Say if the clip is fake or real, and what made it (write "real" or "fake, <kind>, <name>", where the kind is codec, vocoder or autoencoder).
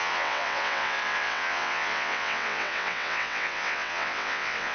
fake, vocoder, WaveNeXt